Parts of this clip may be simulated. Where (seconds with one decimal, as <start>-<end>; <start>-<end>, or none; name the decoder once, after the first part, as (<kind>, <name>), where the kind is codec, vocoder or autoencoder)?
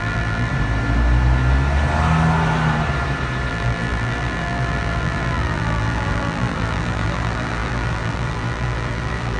0.0-0.5 (vocoder, BigVGAN v2); 3.5-9.4